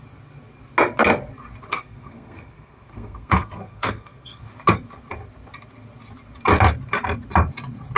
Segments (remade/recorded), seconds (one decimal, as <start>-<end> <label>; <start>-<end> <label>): 0.0-1.7 recorded; 1.7-4.4 remade; 4.4-8.0 recorded